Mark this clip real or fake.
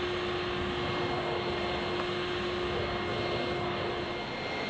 real